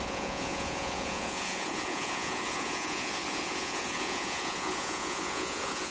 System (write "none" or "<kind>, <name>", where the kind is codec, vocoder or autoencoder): vocoder, Vocos